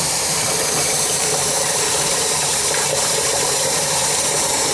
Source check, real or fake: fake